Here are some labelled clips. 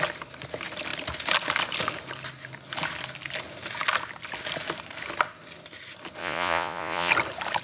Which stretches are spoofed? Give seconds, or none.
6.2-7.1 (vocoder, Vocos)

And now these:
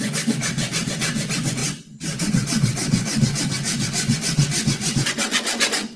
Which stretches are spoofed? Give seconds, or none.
0.0-6.0 (vocoder, Vocos)